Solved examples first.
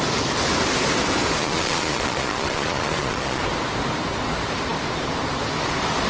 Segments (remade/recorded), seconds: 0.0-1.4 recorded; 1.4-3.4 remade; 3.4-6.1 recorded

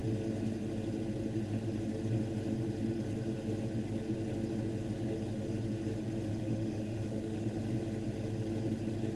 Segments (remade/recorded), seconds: 0.0-6.3 recorded; 6.3-7.6 remade; 7.6-9.2 recorded

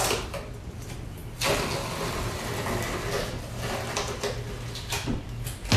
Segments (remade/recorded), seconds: 0.0-5.8 recorded

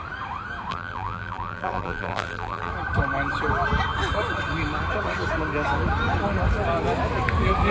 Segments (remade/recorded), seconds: 0.0-0.7 recorded; 0.7-2.7 remade; 2.7-7.7 recorded

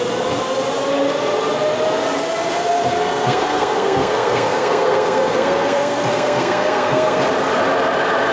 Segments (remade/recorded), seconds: 0.0-2.6 recorded; 2.6-7.2 remade; 7.2-8.3 recorded

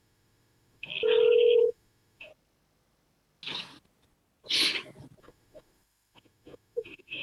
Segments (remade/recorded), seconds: 0.0-0.9 remade; 0.9-1.6 recorded; 1.6-2.3 remade; 2.3-5.2 recorded; 5.2-7.2 remade

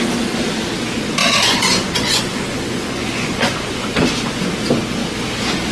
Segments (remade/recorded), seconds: 0.0-1.2 recorded; 1.2-4.4 remade; 4.4-5.7 recorded